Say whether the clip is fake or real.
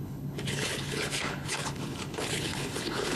fake